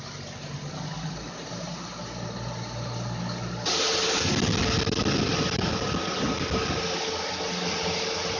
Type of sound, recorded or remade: recorded